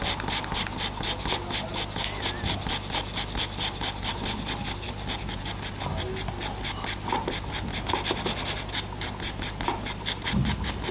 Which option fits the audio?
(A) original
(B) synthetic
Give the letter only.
A